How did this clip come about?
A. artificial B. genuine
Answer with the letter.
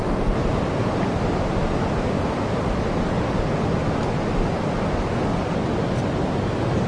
B